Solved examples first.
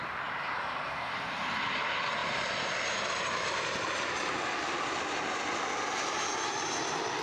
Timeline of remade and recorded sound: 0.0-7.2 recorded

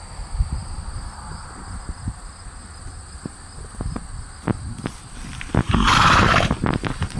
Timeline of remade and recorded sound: 0.0-5.6 recorded; 5.6-7.2 remade

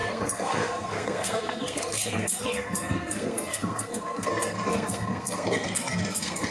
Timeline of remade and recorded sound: 0.0-6.5 remade

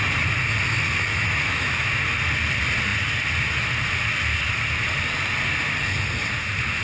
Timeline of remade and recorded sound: 0.0-1.1 recorded; 1.1-2.0 remade; 2.0-6.8 recorded

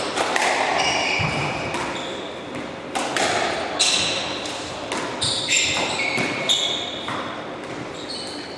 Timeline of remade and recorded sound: 0.0-8.6 recorded

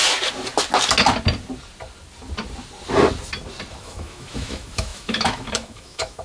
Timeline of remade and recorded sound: 0.0-3.7 recorded; 3.7-6.2 remade

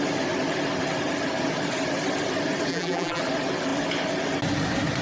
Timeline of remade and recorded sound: 0.0-2.7 recorded; 2.7-3.2 remade; 3.2-5.0 recorded